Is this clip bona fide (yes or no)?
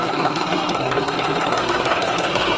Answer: no